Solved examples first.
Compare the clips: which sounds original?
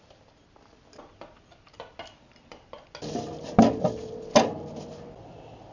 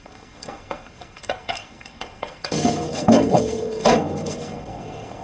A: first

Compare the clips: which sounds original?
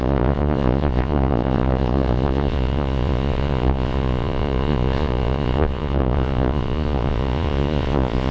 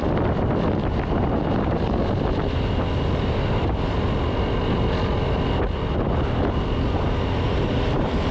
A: second